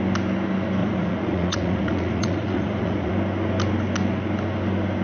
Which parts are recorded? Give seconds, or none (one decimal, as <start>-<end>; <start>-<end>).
0.0-0.8; 3.1-5.0